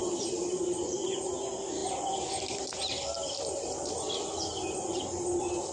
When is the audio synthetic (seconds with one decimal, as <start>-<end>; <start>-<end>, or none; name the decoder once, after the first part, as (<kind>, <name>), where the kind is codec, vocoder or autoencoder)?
0.0-1.3 (vocoder, BigVGAN v2); 4.6-5.3